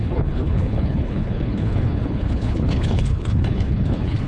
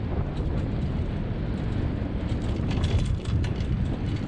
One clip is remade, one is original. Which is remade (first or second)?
first